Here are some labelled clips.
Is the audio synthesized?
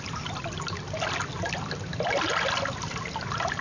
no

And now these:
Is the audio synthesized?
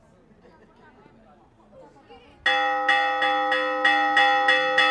no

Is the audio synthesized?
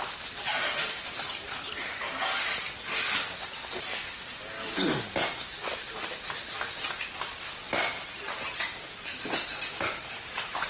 no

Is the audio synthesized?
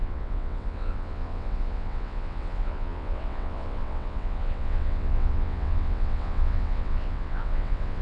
yes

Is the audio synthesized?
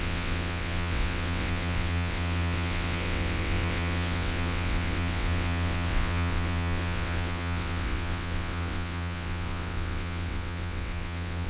yes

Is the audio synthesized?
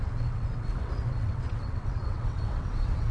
yes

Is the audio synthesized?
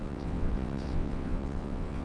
yes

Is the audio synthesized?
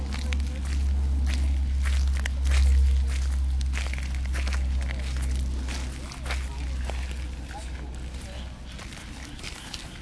no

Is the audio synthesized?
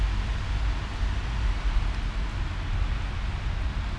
no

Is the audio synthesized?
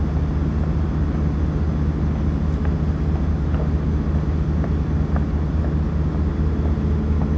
no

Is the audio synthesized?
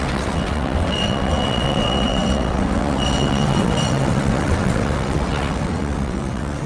yes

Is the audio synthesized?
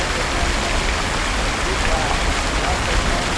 no